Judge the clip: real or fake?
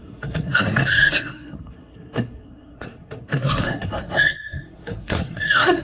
fake